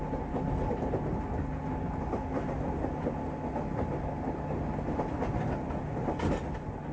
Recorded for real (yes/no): yes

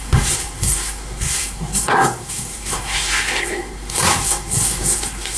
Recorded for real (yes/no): no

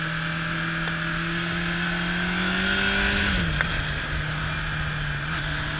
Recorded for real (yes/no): yes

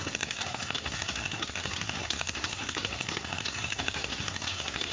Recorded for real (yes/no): no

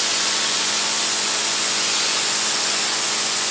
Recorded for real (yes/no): no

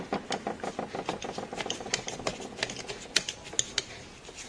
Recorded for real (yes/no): yes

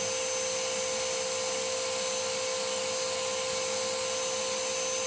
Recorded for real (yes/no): yes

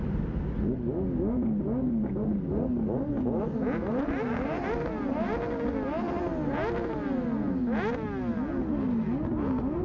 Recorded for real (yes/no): yes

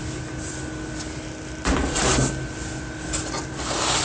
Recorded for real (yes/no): yes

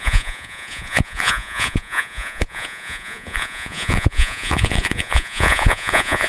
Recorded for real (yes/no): no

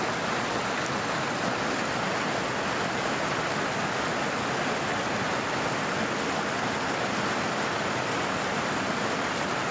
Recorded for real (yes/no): yes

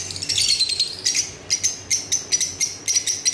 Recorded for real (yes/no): yes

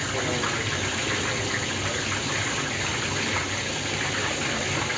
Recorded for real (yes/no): yes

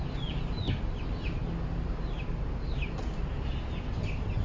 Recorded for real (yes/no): yes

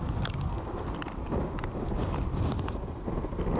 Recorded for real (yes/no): yes